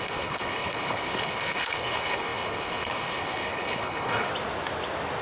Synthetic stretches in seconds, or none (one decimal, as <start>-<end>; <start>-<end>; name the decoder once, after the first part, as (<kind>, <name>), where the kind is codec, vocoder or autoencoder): 0.0-4.3 (codec, HILCodec)